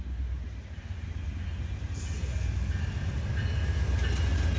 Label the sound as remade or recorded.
recorded